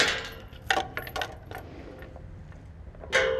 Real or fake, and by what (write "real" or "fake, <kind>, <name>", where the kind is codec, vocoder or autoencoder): real